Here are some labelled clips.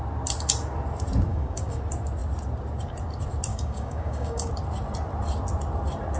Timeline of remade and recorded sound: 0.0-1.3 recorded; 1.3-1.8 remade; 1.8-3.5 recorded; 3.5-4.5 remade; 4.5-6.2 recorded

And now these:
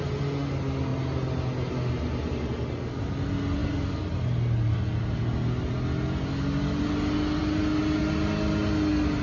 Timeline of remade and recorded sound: 0.0-9.2 recorded

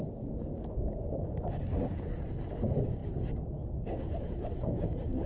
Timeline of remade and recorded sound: 0.0-5.3 remade

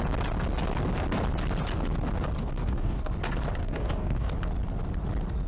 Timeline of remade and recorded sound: 0.0-2.4 recorded; 2.4-3.1 remade; 3.1-3.6 recorded; 3.6-4.3 remade; 4.3-5.5 recorded

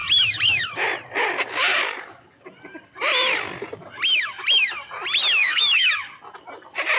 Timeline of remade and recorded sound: 0.0-1.7 recorded; 1.7-2.4 remade; 2.4-5.4 recorded; 5.4-5.9 remade; 5.9-7.0 recorded

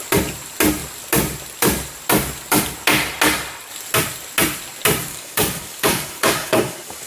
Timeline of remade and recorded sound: 0.0-5.1 recorded; 5.1-7.1 remade

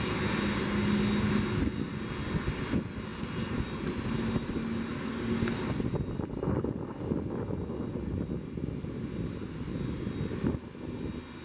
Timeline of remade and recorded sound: 0.0-4.9 recorded; 4.9-5.7 remade; 5.7-11.4 recorded